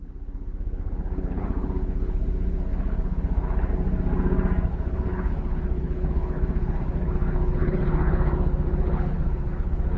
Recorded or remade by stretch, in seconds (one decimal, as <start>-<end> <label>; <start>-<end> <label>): 0.0-3.7 remade; 3.7-4.7 recorded; 4.7-10.0 remade